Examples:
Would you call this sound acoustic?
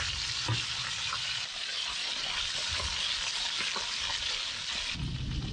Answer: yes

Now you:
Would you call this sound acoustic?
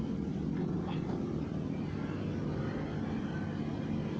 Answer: yes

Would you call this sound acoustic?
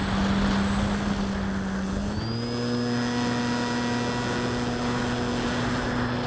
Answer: yes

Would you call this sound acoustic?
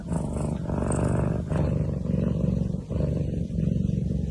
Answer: yes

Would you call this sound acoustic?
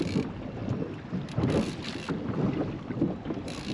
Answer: yes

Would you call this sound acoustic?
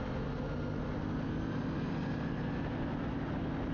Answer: yes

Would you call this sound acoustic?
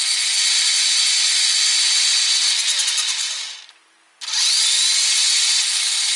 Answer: yes